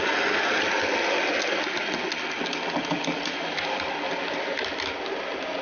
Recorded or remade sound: recorded